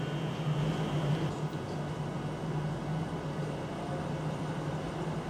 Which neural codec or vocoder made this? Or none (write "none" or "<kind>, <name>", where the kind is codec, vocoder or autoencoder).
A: none